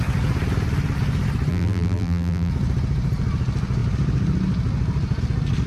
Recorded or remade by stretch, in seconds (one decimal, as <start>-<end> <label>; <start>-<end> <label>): 0.0-1.5 recorded; 1.5-2.5 remade; 2.5-5.7 recorded